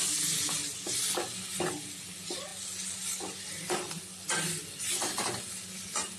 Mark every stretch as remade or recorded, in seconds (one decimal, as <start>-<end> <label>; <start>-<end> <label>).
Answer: 0.0-6.2 recorded